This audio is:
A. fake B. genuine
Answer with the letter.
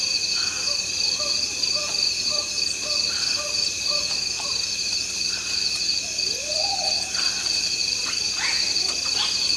B